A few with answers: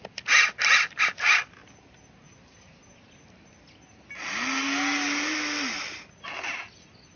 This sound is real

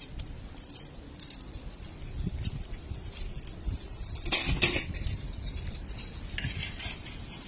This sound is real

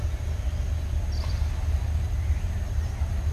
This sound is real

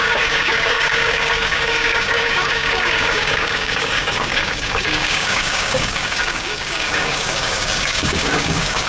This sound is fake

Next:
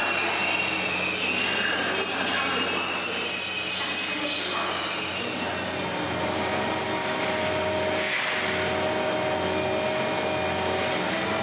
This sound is real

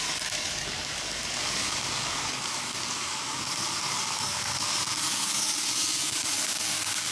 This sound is fake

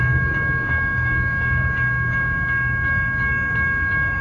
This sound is fake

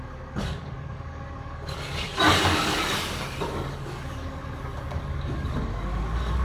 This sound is fake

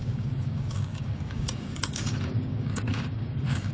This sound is fake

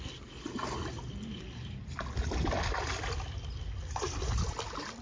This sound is real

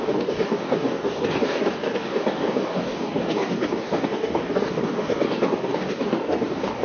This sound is fake